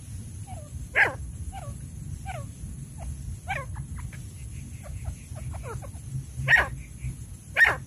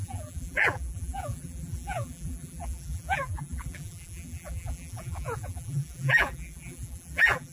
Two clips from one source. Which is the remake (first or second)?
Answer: second